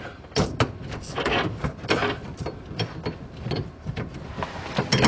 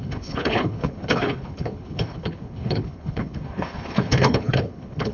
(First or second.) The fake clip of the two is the second